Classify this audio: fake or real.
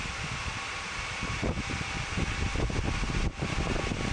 real